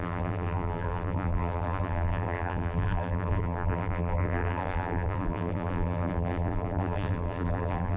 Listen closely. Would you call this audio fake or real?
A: fake